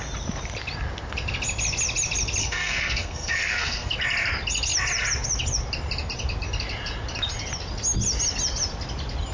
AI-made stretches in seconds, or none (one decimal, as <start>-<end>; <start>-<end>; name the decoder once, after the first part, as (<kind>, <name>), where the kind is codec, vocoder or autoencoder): 2.4-3.9 (codec, SNAC)